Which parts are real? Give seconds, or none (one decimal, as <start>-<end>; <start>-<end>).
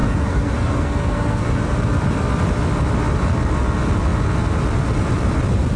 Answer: 1.6-5.8